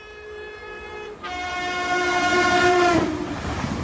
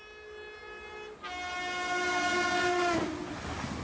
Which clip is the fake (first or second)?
first